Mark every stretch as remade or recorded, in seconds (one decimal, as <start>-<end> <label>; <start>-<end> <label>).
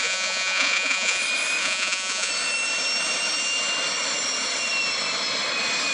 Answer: 0.0-1.2 remade; 1.2-1.6 recorded; 1.6-2.3 remade; 2.3-5.9 recorded